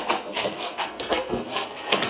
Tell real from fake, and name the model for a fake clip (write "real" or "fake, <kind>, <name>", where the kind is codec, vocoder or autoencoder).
fake, codec, SNAC